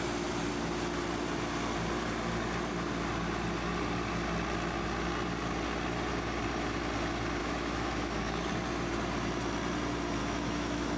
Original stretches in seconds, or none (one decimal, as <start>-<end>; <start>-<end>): 0.0-7.4; 8.5-10.2